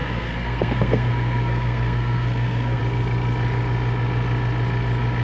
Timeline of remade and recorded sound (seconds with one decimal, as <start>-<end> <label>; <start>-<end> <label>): 0.0-2.8 remade; 2.8-5.2 recorded